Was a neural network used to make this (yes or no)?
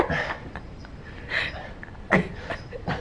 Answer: yes